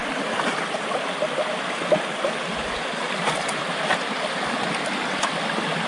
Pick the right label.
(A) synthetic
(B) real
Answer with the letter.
B